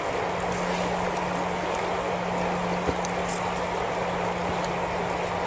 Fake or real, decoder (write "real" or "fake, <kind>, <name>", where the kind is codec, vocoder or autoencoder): real